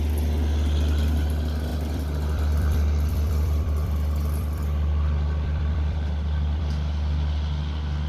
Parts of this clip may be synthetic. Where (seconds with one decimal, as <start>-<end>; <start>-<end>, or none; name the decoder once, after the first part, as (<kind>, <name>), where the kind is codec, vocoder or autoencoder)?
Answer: 1.7-6.6 (vocoder, BigVGAN v2)